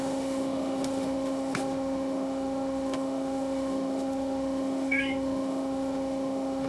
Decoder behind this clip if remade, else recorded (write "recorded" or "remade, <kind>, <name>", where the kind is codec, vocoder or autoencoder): remade, autoencoder, DAC-VAE